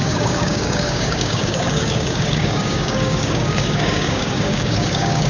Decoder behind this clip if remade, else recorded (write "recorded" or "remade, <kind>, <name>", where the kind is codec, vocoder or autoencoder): remade, codec, DAC